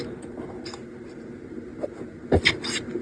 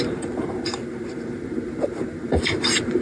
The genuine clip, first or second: first